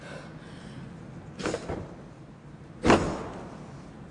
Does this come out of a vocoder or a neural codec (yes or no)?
no